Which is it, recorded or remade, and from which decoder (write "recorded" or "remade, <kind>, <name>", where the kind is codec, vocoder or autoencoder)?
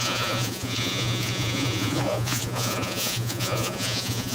remade, vocoder, Vocos